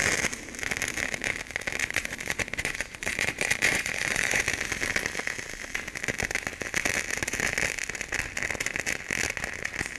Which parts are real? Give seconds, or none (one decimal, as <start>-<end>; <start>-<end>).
0.0-1.8; 4.4-10.0